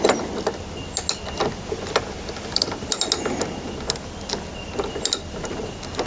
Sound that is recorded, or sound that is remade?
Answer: recorded